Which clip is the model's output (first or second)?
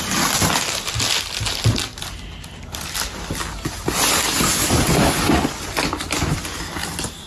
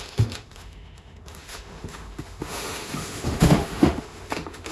second